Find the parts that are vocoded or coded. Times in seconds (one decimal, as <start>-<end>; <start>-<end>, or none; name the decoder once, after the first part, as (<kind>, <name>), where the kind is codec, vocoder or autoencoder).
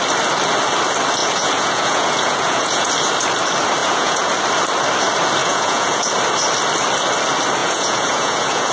1.2-2.9 (vocoder, Vocos); 3.8-4.3; 5.4-6.1; 7.6-8.7